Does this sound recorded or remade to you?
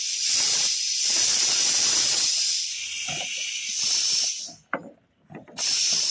recorded